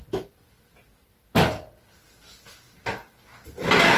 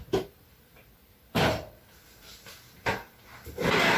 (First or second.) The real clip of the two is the first